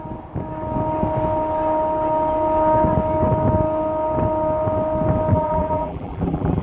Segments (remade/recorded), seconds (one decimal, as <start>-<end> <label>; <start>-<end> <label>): 0.0-5.3 recorded; 5.3-6.6 remade